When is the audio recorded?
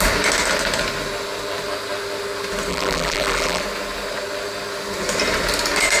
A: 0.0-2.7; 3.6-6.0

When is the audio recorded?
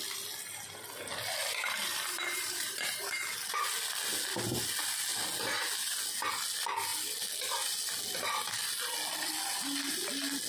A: 0.0-1.4; 3.4-10.5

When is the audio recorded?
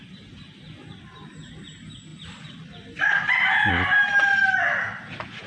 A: 0.0-5.5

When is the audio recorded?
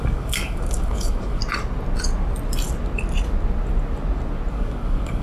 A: 1.4-4.5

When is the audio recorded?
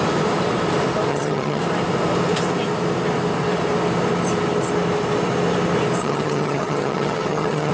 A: 0.0-1.1; 1.6-6.0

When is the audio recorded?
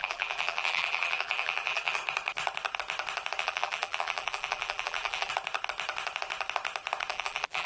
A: 2.0-3.4; 5.3-7.1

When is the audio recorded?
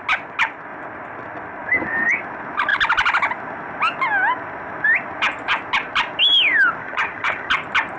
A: 0.0-6.8; 7.5-8.0